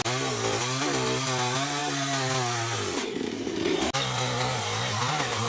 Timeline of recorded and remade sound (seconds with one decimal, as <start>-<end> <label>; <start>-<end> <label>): 0.0-5.5 recorded